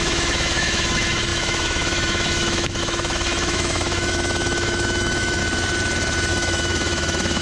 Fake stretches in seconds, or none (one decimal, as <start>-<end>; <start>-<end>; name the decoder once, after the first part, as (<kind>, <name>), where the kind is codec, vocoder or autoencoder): 0.0-5.4 (autoencoder, DAC-VAE); 6.3-7.4